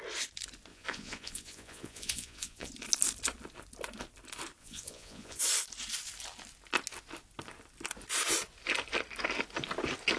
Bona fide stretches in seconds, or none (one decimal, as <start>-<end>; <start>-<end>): 0.0-0.7; 2.7-4.6; 5.4-10.2